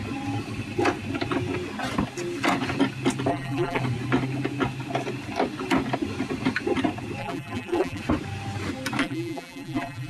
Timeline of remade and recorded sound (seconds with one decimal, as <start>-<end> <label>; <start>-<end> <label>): 0.0-3.3 recorded; 3.3-3.8 remade; 3.8-7.2 recorded; 7.2-8.0 remade; 8.0-9.0 recorded; 9.0-10.1 remade